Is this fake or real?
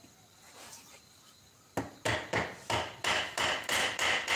real